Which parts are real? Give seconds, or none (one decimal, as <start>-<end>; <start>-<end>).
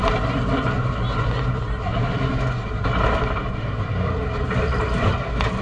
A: 0.0-5.6